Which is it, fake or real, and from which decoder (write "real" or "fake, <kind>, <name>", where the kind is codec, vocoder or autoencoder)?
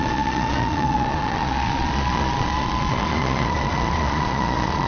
fake, vocoder, Vocos